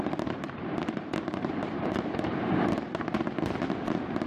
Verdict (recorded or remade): remade